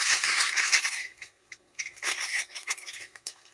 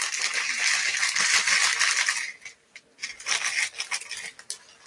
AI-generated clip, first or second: first